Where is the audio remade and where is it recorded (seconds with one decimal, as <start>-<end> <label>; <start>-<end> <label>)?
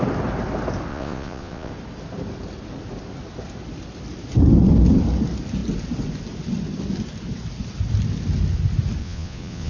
0.0-0.9 recorded; 0.9-1.7 remade; 1.7-9.0 recorded; 9.0-9.7 remade